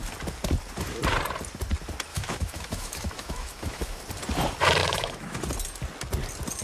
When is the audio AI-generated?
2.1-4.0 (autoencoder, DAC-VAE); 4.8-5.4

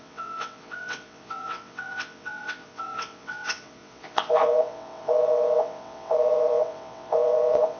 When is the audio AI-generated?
0.0-7.8 (vocoder, WaveNeXt)